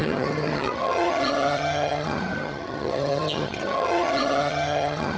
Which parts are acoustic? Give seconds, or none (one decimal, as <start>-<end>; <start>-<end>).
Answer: none